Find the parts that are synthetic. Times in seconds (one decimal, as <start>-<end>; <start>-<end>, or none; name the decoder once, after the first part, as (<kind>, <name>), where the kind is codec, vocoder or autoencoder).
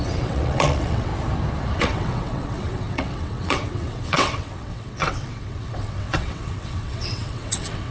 0.0-1.1 (vocoder, WaveNeXt); 1.7-7.9